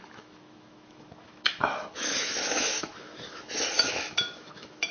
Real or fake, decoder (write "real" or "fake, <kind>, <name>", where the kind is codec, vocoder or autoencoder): fake, autoencoder, DAC-VAE